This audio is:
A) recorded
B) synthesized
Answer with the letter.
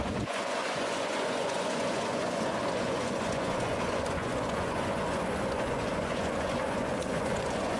B